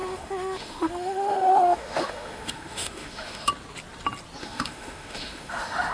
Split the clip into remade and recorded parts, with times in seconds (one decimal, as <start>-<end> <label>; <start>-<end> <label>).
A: 0.0-3.5 remade; 3.5-4.4 recorded; 4.4-5.9 remade